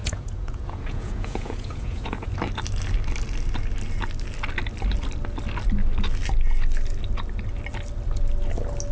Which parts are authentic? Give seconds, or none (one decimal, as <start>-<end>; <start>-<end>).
2.3-8.9